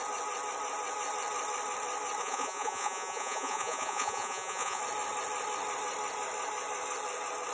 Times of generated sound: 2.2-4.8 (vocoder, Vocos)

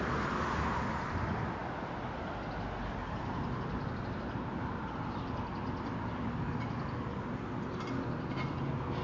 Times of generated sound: none

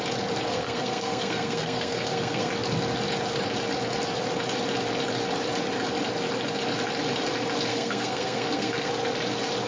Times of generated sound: 0.5-2.5 (codec, SNAC); 7.7-8.9